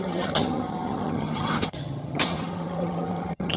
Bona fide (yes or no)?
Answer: no